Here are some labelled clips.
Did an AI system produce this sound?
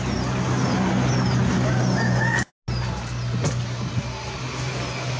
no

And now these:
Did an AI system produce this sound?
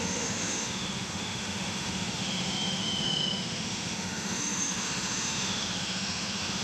yes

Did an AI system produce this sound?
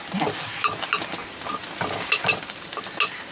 no